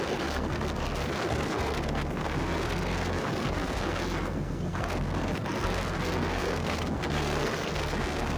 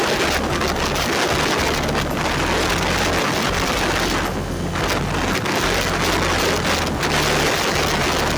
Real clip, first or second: second